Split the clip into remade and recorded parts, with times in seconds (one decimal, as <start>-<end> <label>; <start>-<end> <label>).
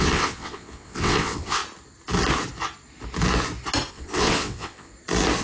0.0-1.6 remade; 1.6-3.9 recorded; 3.9-4.9 remade; 4.9-5.4 recorded